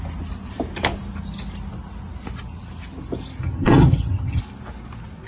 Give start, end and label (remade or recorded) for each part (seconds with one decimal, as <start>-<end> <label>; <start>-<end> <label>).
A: 0.0-3.4 recorded; 3.4-4.4 remade; 4.4-5.3 recorded